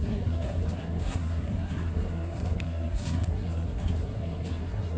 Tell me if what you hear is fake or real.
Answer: fake